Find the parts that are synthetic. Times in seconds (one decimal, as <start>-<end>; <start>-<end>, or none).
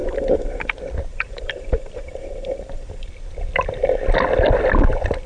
0.0-0.7; 1.1-3.1